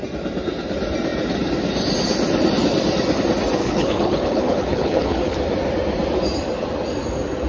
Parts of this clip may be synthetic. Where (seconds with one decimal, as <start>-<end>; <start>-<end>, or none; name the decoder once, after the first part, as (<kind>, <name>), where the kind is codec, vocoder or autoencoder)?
3.6-5.4 (codec, HILCodec)